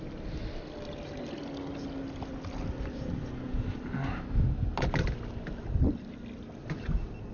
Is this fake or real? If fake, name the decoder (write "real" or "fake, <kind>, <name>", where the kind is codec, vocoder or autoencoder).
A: real